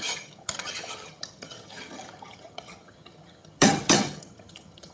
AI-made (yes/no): yes